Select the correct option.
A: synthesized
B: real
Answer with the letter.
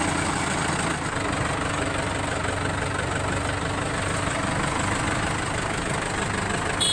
B